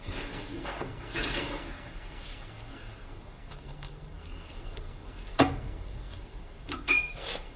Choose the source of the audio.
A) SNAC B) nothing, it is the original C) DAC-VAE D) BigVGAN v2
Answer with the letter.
A